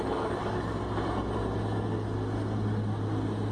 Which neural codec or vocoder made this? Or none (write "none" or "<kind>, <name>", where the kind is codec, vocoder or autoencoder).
none